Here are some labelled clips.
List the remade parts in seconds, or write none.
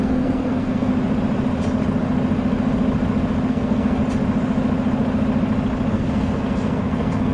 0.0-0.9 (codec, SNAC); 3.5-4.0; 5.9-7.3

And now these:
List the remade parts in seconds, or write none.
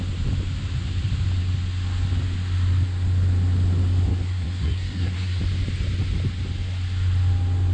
4.1-5.4 (codec, SNAC)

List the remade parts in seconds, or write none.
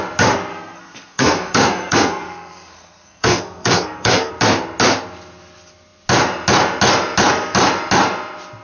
0.5-4.3 (codec, SNAC)